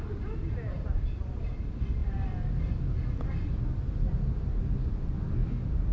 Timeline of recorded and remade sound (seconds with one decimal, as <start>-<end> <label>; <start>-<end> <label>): 0.0-5.9 recorded

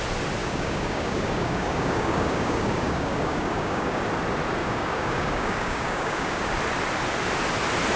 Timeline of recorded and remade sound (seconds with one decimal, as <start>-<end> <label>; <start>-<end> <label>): 0.0-0.4 recorded; 0.4-4.0 remade; 4.0-4.6 recorded; 4.6-6.5 remade; 6.5-8.0 recorded

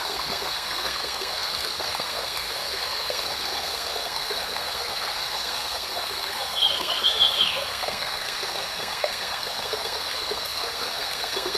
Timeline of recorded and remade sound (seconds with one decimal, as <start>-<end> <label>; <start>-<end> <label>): 0.0-11.6 remade

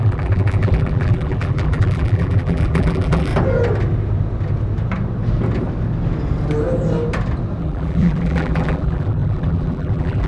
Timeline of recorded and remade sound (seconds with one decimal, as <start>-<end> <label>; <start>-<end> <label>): 0.0-3.3 remade; 3.3-7.6 recorded; 7.6-10.3 remade

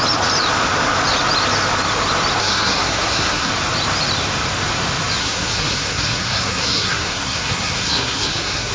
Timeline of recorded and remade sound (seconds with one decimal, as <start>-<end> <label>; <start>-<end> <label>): 0.0-2.4 recorded; 2.4-3.5 remade; 3.5-5.2 recorded; 5.2-8.7 remade

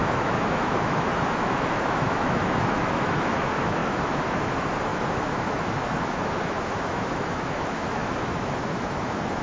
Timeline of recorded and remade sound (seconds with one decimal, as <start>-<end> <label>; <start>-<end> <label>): 0.0-9.4 remade

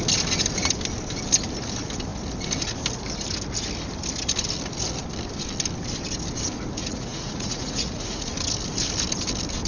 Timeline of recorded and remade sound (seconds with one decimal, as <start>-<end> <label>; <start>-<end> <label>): 0.0-6.8 recorded; 6.8-8.3 remade; 8.3-9.7 recorded

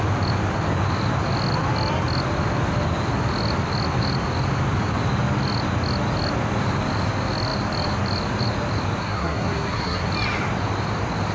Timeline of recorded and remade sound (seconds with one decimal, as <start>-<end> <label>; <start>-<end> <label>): 0.0-9.0 recorded; 9.0-10.1 remade; 10.1-11.3 recorded